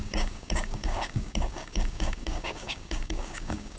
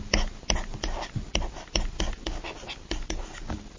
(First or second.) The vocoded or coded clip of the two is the first